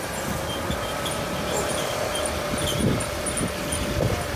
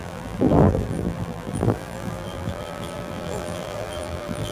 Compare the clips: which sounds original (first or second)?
first